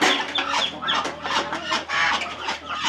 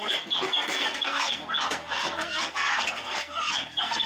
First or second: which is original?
first